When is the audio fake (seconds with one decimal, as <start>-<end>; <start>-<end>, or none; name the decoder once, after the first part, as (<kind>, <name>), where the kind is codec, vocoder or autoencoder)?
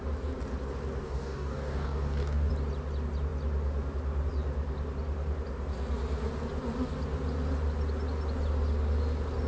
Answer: 1.0-2.5 (codec, DAC)